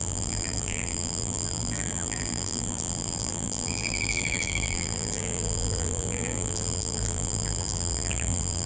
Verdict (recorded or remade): remade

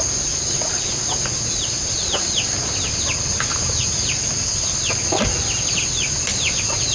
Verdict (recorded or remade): recorded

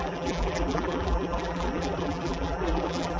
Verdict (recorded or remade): remade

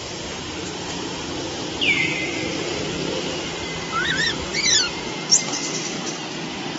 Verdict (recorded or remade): recorded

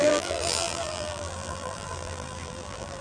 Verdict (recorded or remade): remade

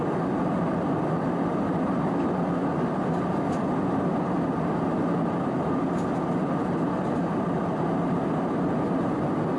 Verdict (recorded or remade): recorded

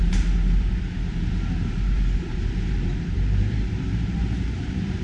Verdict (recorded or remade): remade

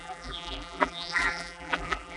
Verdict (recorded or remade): remade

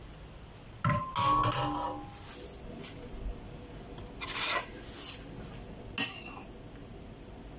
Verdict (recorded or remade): recorded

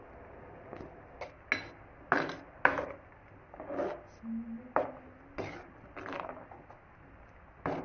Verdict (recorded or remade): recorded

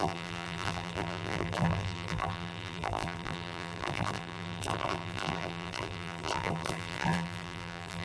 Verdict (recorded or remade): remade